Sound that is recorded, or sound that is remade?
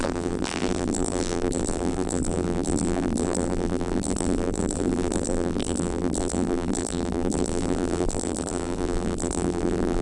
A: remade